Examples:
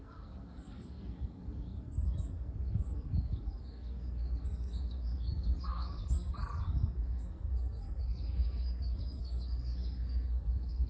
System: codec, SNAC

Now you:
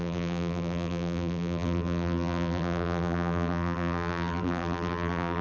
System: vocoder, BigVGAN v2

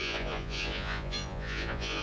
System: vocoder, Vocos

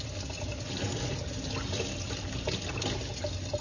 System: none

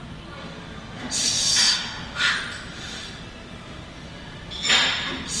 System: none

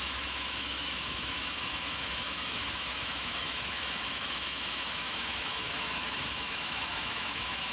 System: autoencoder, DAC-VAE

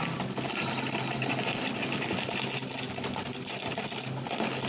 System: none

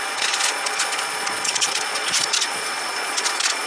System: vocoder, Vocos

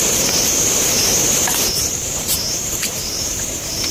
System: vocoder, BigVGAN v2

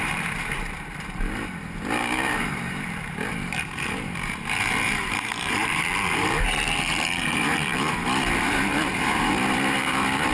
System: vocoder, BigVGAN v2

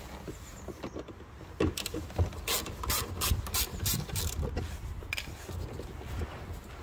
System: none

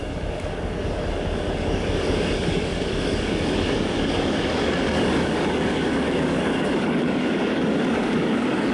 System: codec, DAC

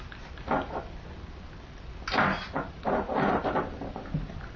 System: none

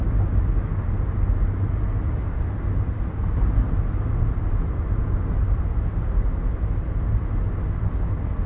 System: none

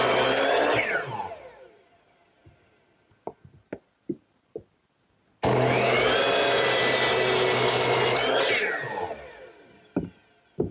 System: none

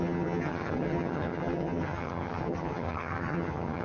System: vocoder, HiFi-GAN